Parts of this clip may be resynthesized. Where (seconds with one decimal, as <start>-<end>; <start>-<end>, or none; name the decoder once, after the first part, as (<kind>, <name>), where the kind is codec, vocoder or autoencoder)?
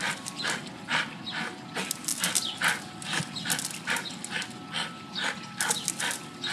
none